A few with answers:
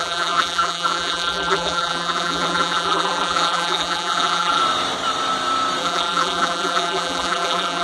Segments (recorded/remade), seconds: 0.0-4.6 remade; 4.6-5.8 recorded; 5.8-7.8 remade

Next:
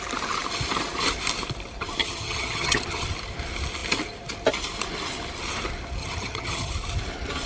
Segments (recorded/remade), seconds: 0.0-2.0 recorded; 2.0-3.1 remade; 3.1-6.0 recorded; 6.0-6.7 remade; 6.7-7.5 recorded